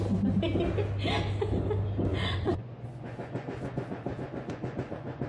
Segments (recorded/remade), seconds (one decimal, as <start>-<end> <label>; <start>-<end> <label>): 0.0-2.1 recorded; 2.1-5.3 remade